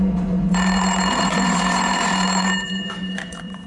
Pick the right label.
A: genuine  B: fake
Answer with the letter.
B